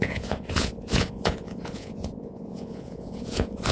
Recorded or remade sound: remade